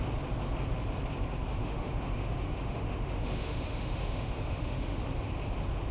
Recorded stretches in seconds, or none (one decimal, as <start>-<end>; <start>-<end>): 0.0-1.5; 5.0-5.9